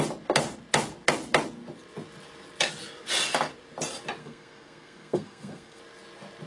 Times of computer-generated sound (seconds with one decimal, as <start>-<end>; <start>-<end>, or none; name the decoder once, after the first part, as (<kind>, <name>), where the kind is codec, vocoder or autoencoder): 4.2-5.8 (codec, SNAC)